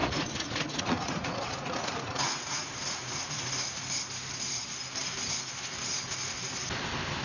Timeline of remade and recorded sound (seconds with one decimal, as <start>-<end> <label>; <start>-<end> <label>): 0.0-3.4 remade; 3.4-7.2 recorded